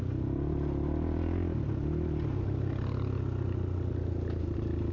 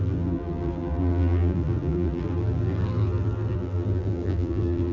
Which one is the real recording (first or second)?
first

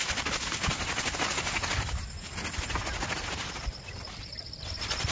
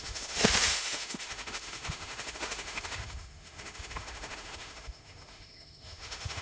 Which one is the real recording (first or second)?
first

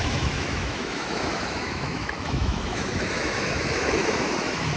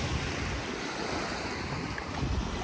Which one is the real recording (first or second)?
second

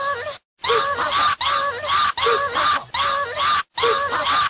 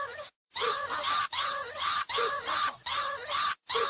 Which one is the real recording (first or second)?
first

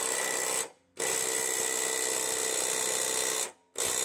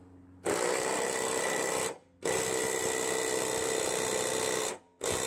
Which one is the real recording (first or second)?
first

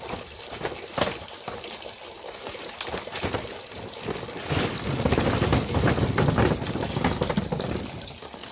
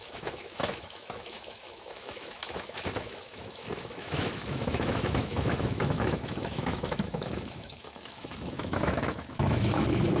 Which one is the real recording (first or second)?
first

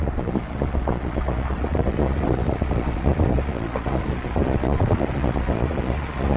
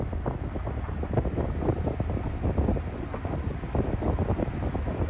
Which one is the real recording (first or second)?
second